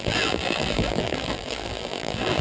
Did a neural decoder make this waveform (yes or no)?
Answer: yes